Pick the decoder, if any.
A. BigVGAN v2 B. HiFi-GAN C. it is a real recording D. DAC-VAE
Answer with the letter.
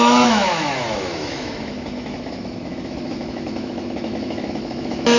D